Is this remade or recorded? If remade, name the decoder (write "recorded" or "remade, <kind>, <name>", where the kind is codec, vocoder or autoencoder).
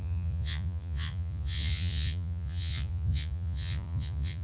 remade, vocoder, Vocos